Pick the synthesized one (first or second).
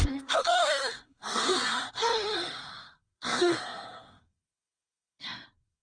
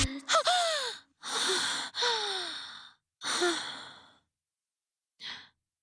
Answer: first